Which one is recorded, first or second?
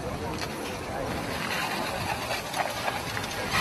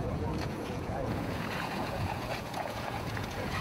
first